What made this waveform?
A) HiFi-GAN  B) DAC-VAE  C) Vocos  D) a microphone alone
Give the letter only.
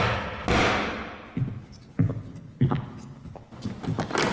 D